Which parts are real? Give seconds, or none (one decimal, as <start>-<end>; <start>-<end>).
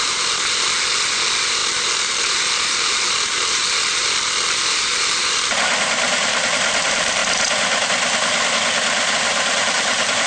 7.2-9.1